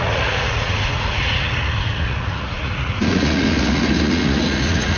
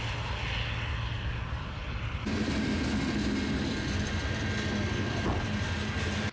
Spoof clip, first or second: first